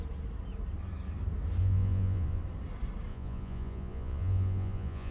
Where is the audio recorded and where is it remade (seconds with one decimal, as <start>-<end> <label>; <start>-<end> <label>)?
0.0-1.6 recorded; 1.6-2.4 remade; 2.4-3.1 recorded; 3.1-5.1 remade